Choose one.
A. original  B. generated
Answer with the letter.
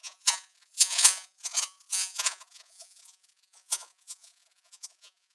B